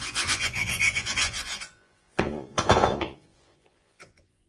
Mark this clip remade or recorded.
remade